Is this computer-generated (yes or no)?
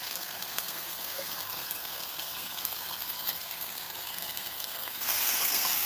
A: yes